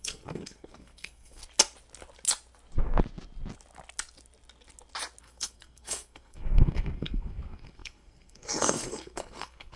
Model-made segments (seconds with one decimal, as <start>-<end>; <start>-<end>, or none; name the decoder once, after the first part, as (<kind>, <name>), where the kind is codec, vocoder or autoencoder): 0.0-1.4 (codec, SNAC); 5.2-9.8